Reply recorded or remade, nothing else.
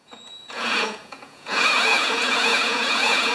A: remade